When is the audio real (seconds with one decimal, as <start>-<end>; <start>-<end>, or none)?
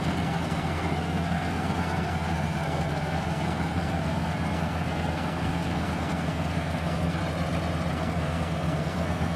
7.2-7.9